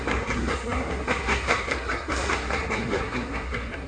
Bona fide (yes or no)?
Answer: no